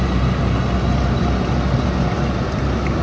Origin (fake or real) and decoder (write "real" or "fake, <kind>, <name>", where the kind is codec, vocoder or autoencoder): real